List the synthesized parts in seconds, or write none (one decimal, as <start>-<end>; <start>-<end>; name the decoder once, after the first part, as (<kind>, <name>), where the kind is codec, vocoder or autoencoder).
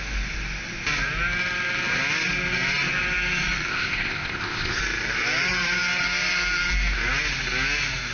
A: 3.7-4.8 (codec, ZipCodec)